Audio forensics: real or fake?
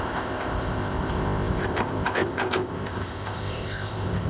fake